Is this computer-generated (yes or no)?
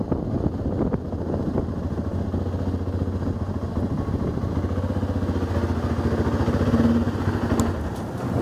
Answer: no